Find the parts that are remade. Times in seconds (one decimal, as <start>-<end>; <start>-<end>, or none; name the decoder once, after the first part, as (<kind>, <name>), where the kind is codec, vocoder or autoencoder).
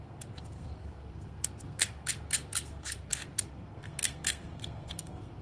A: 0.0-5.4 (codec, SNAC)